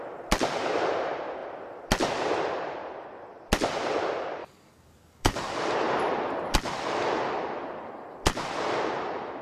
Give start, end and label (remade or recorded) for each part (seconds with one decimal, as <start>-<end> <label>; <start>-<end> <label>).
0.0-4.4 recorded; 4.4-5.7 remade; 5.7-9.4 recorded